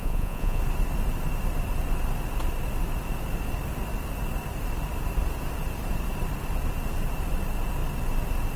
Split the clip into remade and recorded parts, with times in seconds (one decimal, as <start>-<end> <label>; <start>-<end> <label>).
0.0-0.6 remade; 0.6-8.6 recorded